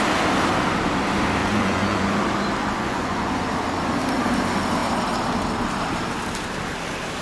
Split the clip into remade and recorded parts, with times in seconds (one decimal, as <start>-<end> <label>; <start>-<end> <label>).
0.0-1.4 recorded; 1.4-2.1 remade; 2.1-2.6 recorded; 2.6-3.4 remade; 3.4-7.2 recorded